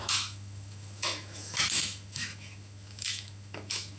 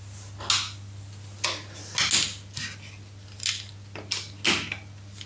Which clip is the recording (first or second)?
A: second